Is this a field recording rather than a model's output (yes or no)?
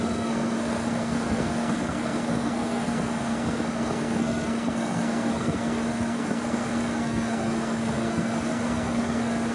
no